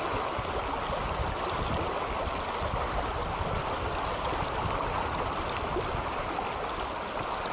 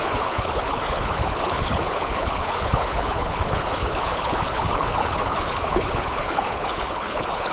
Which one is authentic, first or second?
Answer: first